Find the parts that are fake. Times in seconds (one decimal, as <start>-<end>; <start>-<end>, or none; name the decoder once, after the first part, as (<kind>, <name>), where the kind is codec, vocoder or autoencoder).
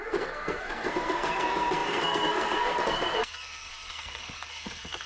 0.0-5.1 (codec, SNAC)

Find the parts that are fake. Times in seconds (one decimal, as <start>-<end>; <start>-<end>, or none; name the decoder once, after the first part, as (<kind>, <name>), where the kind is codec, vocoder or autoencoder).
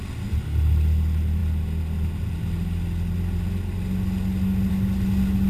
none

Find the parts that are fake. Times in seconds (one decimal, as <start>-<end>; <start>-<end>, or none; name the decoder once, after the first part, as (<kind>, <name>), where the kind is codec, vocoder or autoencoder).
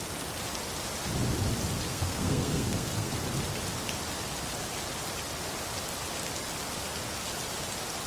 1.9-3.1 (codec, SNAC)